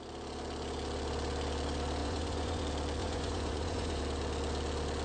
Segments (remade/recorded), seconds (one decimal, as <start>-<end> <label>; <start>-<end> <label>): 0.0-2.0 recorded; 2.0-2.6 remade; 2.6-3.0 recorded; 3.0-4.0 remade; 4.0-5.0 recorded